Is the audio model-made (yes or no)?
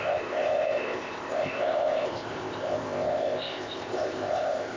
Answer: yes